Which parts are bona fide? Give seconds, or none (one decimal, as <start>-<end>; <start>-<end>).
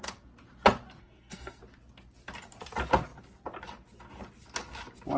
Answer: 0.0-1.0; 1.6-5.2